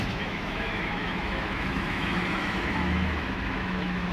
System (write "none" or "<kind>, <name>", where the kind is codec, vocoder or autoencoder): autoencoder, DAC-VAE